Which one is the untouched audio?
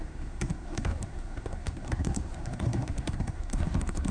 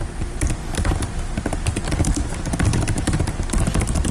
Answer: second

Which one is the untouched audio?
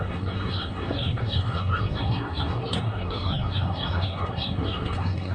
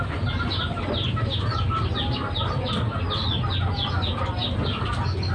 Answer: second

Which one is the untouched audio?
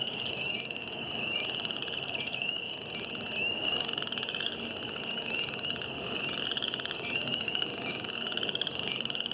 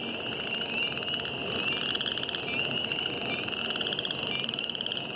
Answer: second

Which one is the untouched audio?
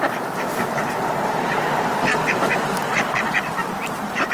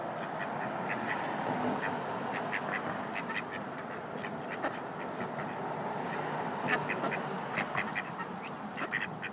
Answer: second